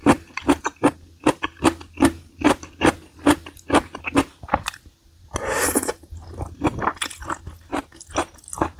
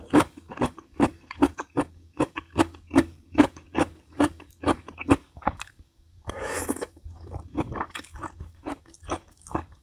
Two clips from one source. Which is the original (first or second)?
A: first